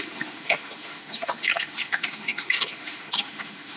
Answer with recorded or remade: remade